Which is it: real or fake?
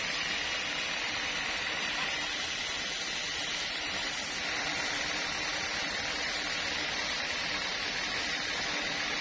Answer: real